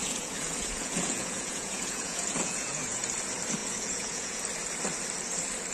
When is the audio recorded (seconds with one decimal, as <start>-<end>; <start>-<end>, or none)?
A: 3.0-3.6; 4.4-5.7